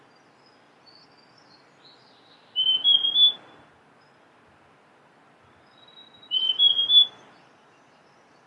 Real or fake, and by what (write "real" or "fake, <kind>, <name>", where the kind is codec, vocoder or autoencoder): real